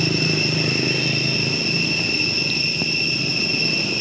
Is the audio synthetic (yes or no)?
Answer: no